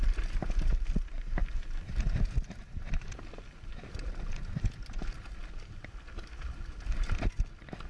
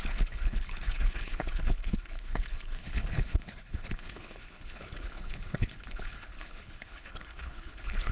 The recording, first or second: first